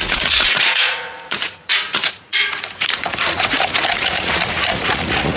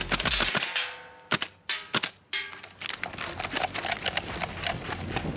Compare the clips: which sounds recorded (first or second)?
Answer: second